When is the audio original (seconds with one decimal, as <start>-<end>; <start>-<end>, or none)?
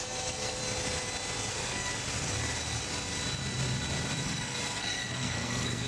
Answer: 0.6-1.5; 1.9-4.2